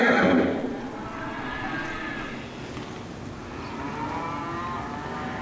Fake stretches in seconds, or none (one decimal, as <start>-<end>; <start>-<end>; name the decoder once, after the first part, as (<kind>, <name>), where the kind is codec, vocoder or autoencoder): 0.6-2.4 (vocoder, Vocos)